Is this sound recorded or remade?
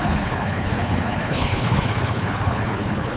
remade